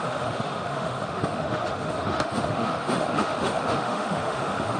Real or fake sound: fake